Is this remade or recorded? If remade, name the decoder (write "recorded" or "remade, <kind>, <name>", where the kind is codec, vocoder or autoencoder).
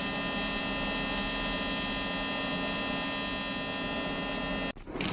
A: recorded